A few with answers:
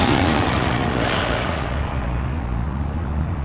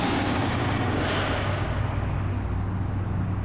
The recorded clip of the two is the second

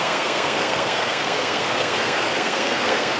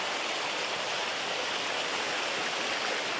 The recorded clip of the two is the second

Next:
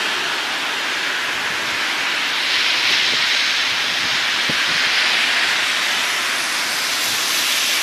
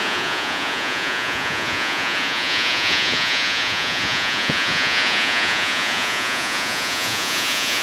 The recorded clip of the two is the first